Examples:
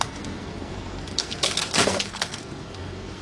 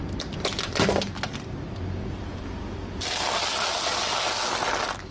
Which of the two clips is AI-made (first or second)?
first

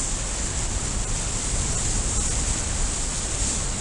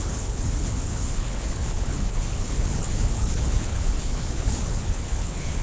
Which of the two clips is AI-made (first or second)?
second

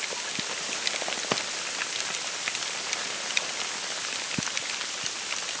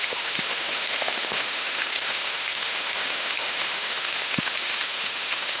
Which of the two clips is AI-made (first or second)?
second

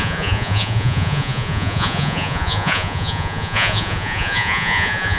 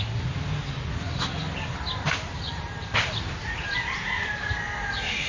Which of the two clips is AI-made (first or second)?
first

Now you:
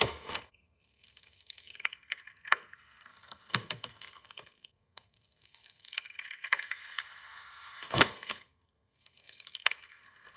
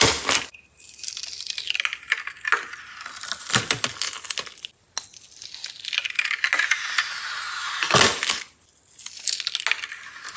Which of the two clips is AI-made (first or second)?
first